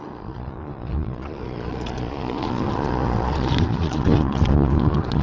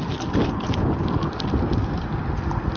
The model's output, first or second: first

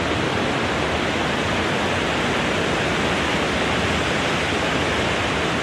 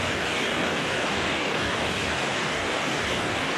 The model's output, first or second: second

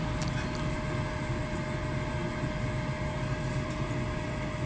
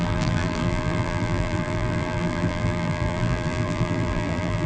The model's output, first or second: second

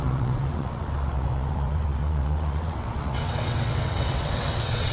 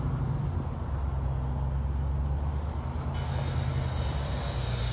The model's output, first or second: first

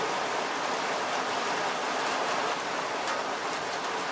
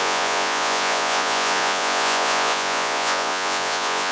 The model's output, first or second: second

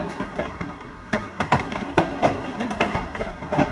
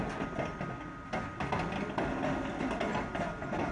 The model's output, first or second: first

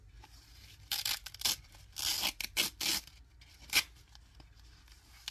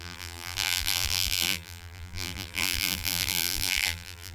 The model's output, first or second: second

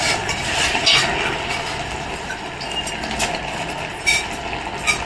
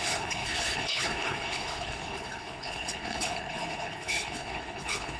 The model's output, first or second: second